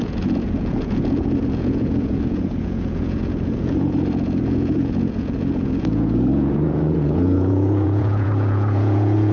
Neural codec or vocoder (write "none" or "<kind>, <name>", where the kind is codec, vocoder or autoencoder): vocoder, Vocos